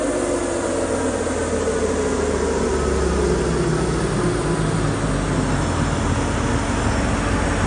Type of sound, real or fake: real